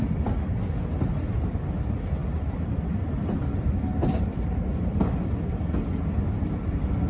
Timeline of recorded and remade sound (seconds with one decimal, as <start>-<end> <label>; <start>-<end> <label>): 0.0-2.2 recorded; 2.2-5.6 remade; 5.6-7.1 recorded